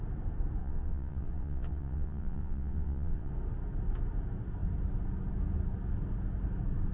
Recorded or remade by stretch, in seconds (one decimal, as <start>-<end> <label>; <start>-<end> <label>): 0.0-0.6 recorded; 0.6-3.3 remade; 3.3-6.9 recorded